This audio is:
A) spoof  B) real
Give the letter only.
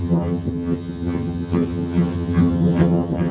A